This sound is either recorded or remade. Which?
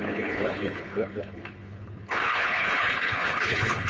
remade